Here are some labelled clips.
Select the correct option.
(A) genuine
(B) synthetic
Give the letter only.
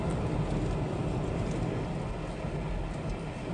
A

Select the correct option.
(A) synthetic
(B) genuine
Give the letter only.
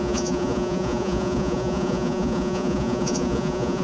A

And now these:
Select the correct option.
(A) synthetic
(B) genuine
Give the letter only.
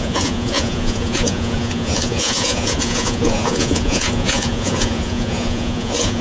A